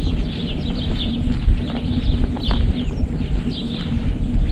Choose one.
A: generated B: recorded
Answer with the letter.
B